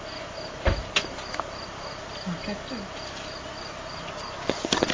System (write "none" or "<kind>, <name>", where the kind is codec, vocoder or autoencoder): none